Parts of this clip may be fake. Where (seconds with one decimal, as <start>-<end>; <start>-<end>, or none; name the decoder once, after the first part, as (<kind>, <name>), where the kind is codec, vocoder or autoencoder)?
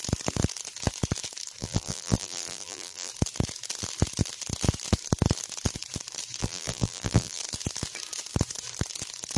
1.6-3.1 (vocoder, BigVGAN v2); 6.4-7.4